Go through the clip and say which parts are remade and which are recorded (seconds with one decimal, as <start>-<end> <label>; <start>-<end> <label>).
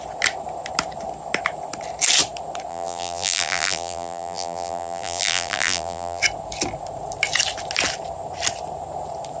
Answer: 0.0-2.7 recorded; 2.7-6.2 remade; 6.2-9.4 recorded